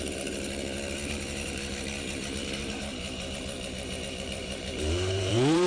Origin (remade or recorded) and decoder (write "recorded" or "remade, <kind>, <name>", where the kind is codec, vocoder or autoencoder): remade, vocoder, BigVGAN v2